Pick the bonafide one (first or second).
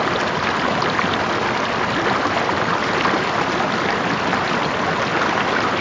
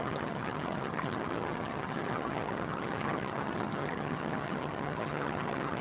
first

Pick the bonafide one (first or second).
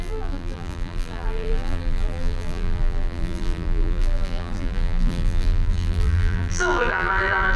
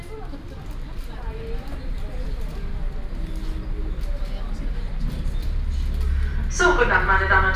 second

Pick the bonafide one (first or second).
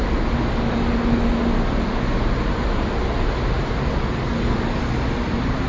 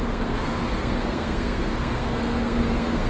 first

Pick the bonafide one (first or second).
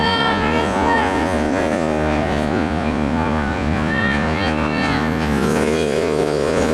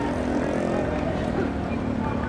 second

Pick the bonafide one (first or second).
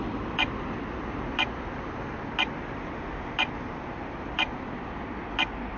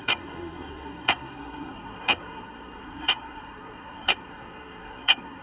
first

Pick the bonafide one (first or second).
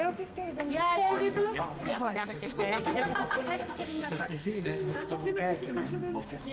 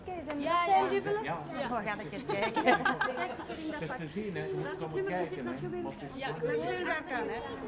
second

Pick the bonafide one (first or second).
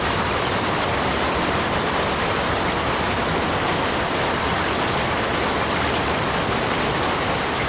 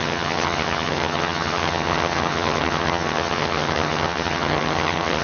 first